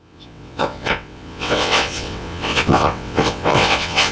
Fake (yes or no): yes